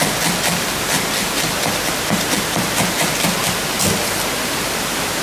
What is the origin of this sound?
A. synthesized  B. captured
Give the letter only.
B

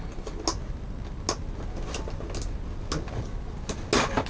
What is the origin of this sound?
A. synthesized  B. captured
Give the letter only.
B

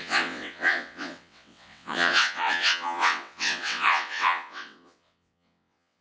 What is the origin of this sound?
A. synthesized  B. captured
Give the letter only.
A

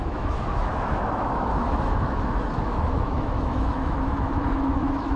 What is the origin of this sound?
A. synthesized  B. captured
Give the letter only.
A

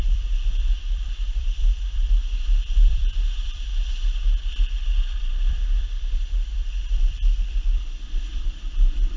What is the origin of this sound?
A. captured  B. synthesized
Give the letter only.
B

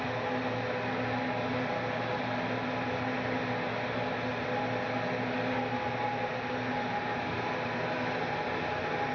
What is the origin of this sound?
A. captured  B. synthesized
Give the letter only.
A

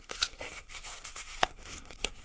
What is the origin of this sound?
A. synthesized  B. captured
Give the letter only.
A